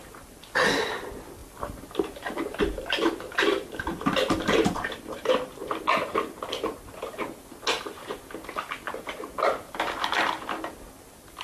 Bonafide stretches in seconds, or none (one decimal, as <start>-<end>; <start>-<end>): 1.4-2.6; 5.6-9.8